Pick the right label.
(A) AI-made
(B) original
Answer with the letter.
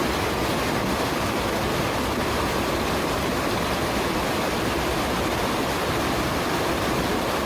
B